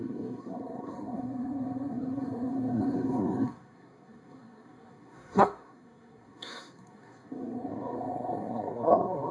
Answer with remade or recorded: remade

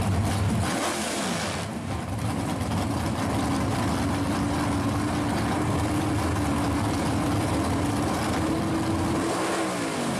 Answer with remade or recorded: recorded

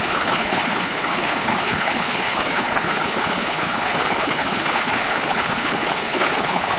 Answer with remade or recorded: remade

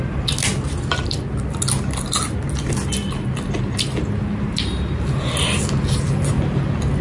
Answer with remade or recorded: recorded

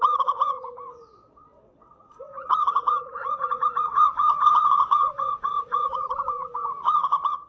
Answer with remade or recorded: remade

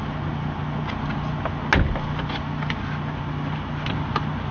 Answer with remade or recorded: recorded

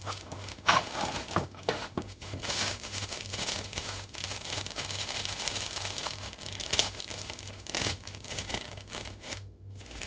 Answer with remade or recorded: remade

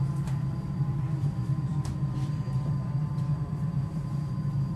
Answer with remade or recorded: remade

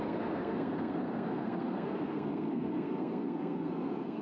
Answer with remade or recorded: remade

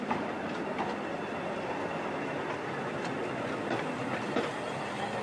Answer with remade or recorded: recorded